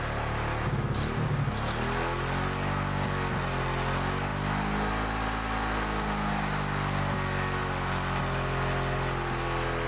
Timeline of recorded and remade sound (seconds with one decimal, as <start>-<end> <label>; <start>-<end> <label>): 0.0-9.9 recorded